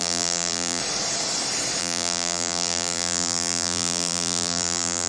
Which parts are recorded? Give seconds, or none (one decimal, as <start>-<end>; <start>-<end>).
0.8-1.8